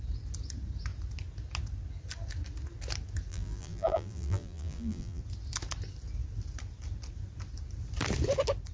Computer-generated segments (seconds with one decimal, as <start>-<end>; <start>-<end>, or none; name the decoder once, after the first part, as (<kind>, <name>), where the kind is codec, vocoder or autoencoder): 3.3-5.2 (vocoder, BigVGAN v2)